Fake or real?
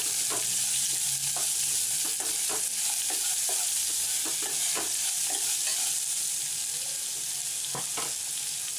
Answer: real